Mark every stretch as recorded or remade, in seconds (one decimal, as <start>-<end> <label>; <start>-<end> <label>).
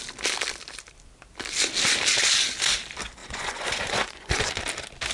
0.0-3.2 recorded; 3.2-4.5 remade; 4.5-5.1 recorded